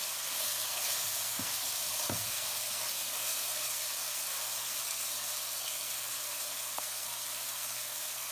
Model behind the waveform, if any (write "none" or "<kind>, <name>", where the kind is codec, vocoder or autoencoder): codec, SNAC